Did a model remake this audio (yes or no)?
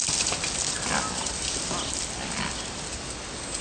no